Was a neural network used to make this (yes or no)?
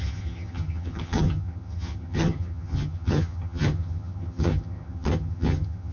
yes